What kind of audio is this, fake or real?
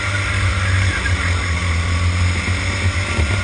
real